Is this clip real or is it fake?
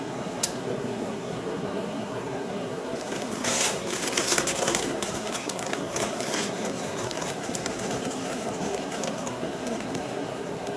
fake